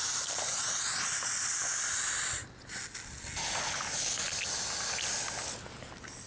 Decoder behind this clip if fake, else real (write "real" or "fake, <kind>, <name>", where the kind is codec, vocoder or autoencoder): real